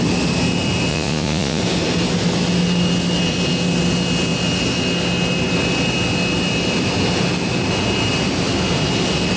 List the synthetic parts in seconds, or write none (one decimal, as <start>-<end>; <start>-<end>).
0.9-1.6